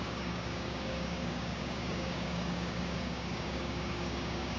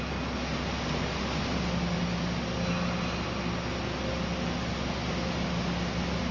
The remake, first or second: first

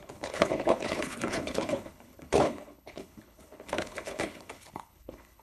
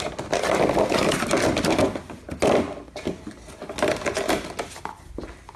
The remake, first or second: first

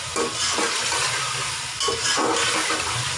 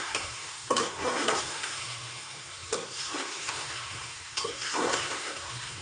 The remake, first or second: second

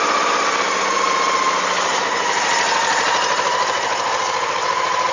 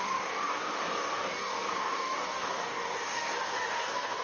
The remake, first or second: second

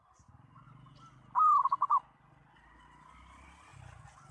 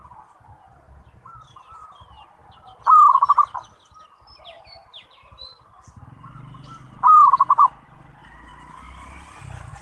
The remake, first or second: second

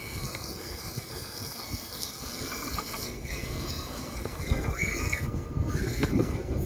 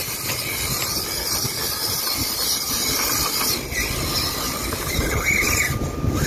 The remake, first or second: first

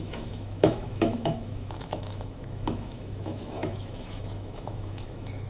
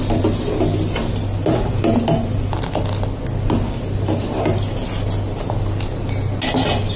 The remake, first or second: first